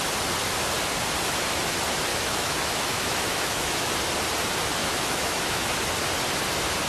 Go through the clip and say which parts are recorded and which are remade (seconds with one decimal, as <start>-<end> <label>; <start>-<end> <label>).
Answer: 0.0-2.1 recorded; 2.1-3.9 remade; 3.9-4.8 recorded; 4.8-5.8 remade; 5.8-6.9 recorded